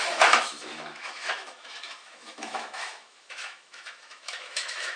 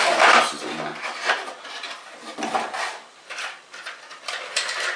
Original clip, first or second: second